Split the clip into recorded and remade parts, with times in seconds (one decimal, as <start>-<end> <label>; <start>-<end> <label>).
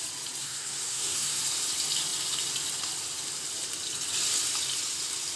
0.0-0.4 recorded; 0.4-1.4 remade; 1.4-5.4 recorded